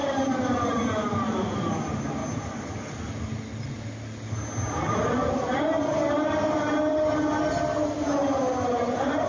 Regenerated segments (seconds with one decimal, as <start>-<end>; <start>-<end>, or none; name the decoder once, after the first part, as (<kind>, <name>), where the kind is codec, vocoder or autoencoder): none